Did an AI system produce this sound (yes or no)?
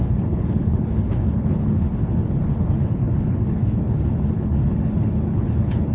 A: yes